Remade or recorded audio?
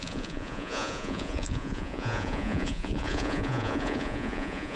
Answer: remade